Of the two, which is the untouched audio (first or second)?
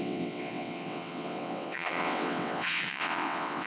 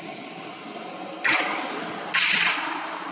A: second